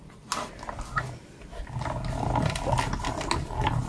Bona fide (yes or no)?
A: yes